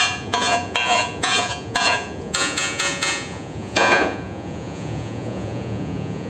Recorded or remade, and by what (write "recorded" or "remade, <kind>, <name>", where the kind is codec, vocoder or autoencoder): remade, vocoder, Vocos